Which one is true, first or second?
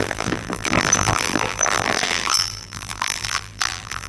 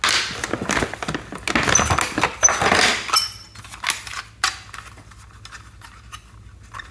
second